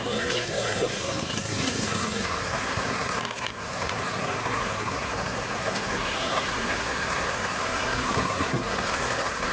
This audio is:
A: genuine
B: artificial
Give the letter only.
B